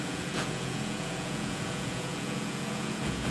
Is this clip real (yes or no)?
no